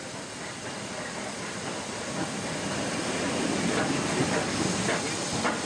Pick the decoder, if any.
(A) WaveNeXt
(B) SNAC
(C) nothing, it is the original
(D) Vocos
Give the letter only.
C